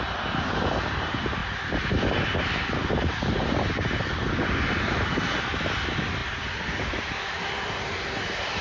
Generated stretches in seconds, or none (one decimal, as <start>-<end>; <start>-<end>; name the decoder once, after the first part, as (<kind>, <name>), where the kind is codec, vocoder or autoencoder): none